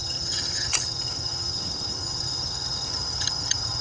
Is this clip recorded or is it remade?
remade